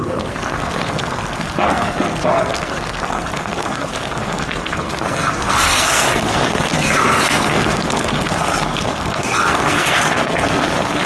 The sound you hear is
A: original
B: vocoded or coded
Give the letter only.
B